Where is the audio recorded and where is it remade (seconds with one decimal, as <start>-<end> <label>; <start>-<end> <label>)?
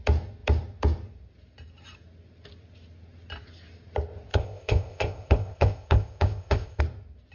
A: 0.0-4.3 recorded; 4.3-6.8 remade; 6.8-7.3 recorded